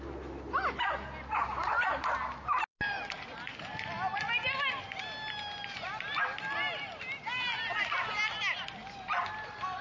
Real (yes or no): yes